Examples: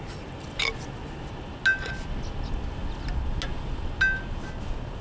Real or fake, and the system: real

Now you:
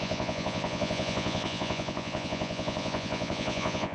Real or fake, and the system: fake, vocoder, Vocos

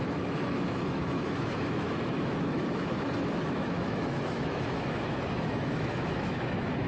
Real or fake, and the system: fake, autoencoder, DAC-VAE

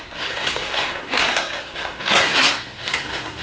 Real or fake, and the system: fake, codec, SNAC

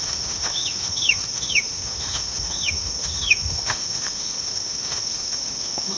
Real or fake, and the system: fake, autoencoder, DAC-VAE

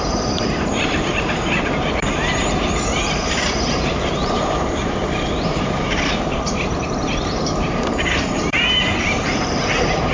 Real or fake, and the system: fake, vocoder, BigVGAN v2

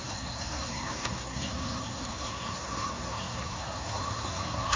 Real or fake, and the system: fake, codec, SNAC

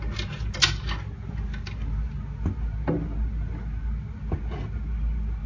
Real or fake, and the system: real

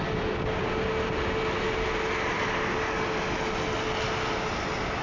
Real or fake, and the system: real